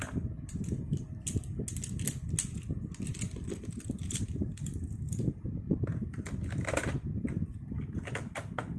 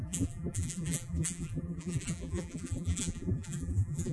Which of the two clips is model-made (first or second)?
second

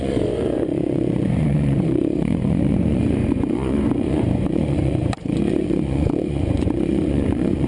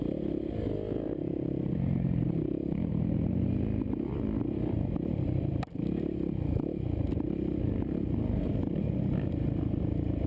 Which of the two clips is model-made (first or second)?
first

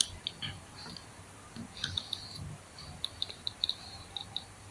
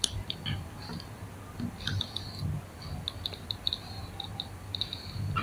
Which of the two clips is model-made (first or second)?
first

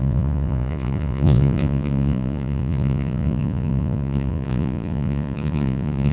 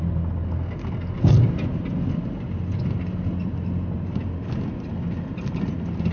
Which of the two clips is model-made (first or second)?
first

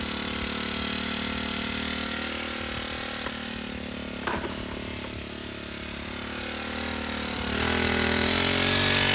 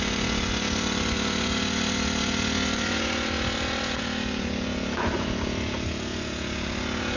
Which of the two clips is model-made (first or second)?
second